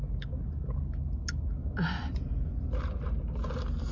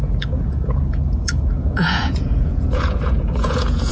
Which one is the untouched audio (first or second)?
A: first